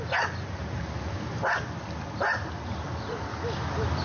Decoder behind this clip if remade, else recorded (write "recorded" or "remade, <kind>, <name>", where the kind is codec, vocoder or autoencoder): recorded